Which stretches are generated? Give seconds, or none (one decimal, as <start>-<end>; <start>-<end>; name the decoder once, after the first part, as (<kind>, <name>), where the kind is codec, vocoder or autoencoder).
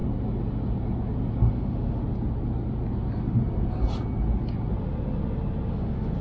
1.5-2.0 (autoencoder, DAC-VAE); 5.7-6.2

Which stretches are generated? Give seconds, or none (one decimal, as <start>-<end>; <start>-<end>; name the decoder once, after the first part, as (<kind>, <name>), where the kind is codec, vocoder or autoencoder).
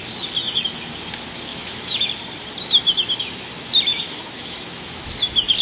1.5-2.1 (autoencoder, DAC-VAE); 3.9-5.1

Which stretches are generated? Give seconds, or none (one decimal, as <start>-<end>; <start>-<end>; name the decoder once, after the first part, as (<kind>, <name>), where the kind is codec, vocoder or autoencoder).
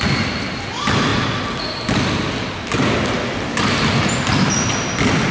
none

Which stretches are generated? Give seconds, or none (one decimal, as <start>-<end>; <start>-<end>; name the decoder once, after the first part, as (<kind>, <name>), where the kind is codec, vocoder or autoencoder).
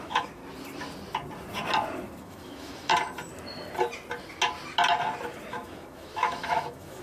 0.0-0.4 (autoencoder, DAC-VAE); 2.2-2.9; 5.5-7.0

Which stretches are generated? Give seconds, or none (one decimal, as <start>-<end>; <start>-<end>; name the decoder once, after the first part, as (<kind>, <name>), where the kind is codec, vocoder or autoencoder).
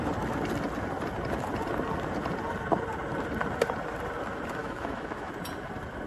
4.6-5.3 (autoencoder, DAC-VAE)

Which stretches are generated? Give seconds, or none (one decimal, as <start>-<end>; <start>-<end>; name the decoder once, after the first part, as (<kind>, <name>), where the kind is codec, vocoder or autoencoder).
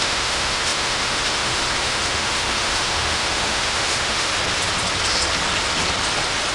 0.0-4.3 (autoencoder, DAC-VAE)